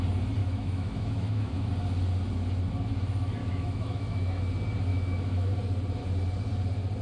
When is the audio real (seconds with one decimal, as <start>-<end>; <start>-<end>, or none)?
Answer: 0.0-0.4; 1.7-3.4; 4.4-4.9; 5.5-7.0